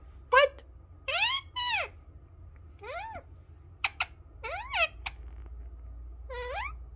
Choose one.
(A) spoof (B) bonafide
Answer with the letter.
B